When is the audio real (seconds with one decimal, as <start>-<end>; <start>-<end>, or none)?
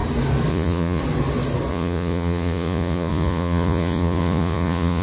0.0-0.5; 1.0-1.7